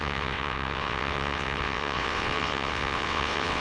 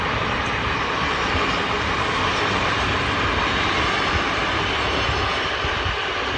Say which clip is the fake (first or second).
first